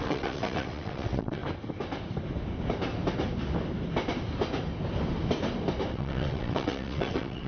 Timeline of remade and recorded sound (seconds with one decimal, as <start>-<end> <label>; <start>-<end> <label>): 0.0-1.4 remade; 1.4-5.9 recorded; 5.9-7.5 remade